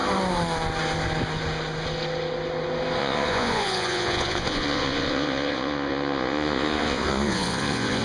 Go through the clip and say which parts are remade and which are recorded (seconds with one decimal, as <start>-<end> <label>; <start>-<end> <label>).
0.0-3.0 recorded; 3.0-8.0 remade

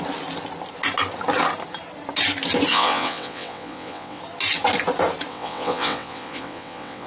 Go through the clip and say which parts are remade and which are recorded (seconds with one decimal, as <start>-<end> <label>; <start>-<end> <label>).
0.0-2.7 recorded; 2.7-4.2 remade; 4.2-5.3 recorded; 5.3-7.1 remade

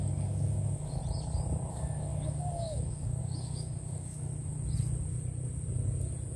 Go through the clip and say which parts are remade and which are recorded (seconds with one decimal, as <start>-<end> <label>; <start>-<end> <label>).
0.0-1.0 remade; 1.0-1.7 recorded; 1.7-4.3 remade; 4.3-6.4 recorded

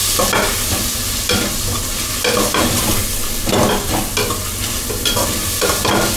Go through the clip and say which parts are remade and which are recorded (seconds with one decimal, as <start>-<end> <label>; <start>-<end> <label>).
0.0-6.2 recorded